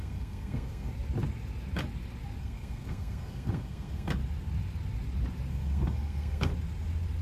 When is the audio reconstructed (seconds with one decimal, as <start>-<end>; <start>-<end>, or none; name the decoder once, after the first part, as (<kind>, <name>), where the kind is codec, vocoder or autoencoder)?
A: 0.0-0.9 (codec, SNAC); 2.4-4.2; 5.5-6.5